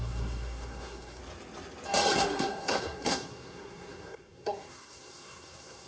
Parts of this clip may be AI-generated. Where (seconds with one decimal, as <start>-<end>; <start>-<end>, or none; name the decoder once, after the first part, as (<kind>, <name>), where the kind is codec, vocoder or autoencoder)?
0.0-1.2 (codec, SNAC); 2.2-5.9